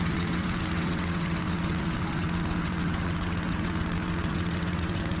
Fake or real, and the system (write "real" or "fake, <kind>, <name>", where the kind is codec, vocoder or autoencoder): fake, vocoder, WaveNeXt